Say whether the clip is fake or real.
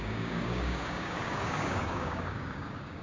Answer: fake